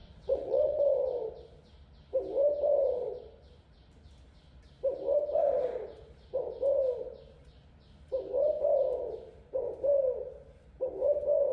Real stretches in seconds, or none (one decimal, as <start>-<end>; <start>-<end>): 0.8-11.5